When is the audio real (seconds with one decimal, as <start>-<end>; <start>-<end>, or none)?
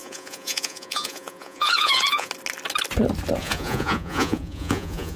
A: 2.3-3.4